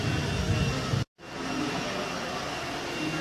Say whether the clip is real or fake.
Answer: real